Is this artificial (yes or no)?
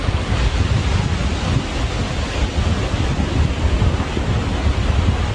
no